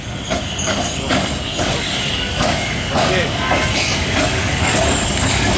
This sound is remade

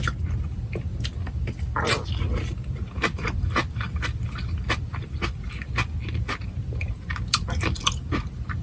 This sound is recorded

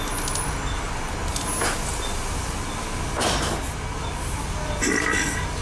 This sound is recorded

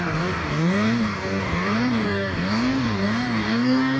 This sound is remade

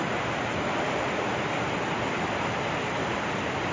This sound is recorded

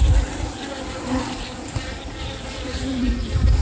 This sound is recorded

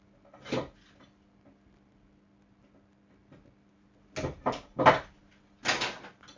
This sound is recorded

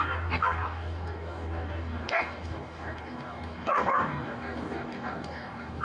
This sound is remade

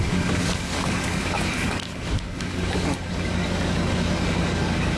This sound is remade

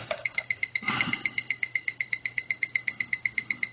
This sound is remade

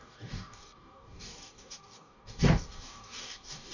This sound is remade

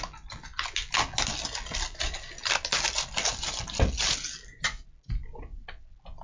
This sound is recorded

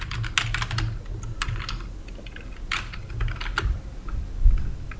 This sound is recorded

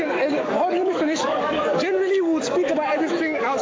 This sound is remade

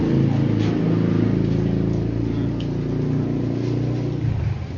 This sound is recorded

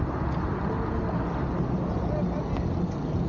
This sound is recorded